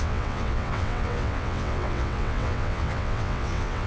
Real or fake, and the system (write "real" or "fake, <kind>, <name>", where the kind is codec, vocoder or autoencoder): fake, vocoder, WaveNeXt